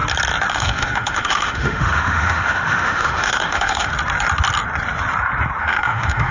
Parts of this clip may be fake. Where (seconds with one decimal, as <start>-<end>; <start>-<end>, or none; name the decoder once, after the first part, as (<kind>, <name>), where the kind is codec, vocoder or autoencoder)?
0.5-3.9 (autoencoder, DAC-VAE); 5.6-6.3